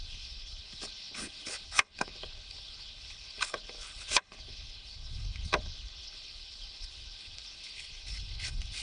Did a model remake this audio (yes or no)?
yes